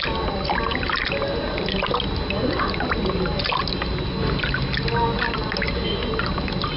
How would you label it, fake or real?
real